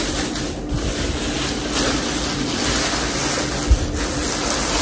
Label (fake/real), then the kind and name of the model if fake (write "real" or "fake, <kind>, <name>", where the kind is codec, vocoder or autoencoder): real